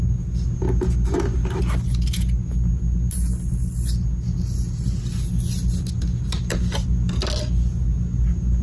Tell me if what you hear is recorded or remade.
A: recorded